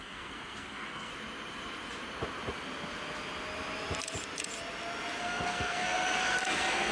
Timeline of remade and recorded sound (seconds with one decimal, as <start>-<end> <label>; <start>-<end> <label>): 0.0-1.1 remade; 1.1-5.2 recorded; 5.2-6.9 remade